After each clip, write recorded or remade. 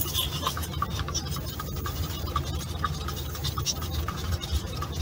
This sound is remade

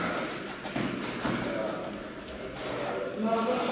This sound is recorded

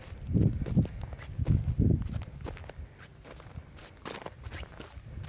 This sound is recorded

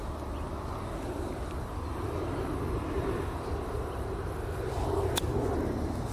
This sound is recorded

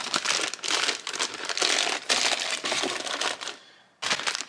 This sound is recorded